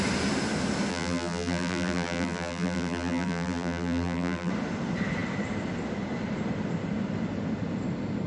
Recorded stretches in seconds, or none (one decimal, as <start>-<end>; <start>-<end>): 0.0-0.9; 4.5-8.3